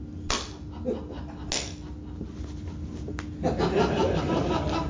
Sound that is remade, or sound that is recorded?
recorded